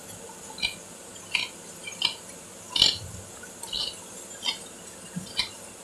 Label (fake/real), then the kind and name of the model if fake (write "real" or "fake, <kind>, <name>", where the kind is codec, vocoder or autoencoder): real